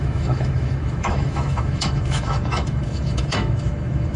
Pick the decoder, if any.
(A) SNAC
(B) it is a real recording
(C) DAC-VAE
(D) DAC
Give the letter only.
C